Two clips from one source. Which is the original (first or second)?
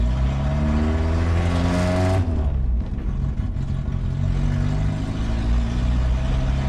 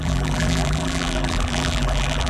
first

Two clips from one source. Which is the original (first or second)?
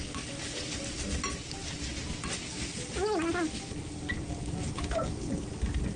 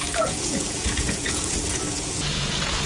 first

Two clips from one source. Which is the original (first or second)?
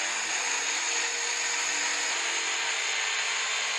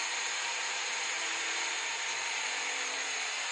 first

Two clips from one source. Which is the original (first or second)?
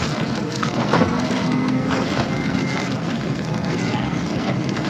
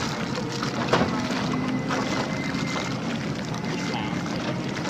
second